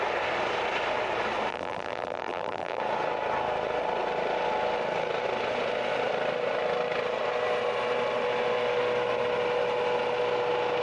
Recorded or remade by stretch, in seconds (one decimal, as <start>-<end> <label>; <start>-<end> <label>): 0.0-1.5 recorded; 1.5-2.8 remade; 2.8-10.8 recorded